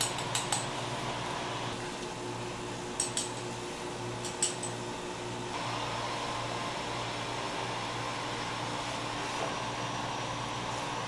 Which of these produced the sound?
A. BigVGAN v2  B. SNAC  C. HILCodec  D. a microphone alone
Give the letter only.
D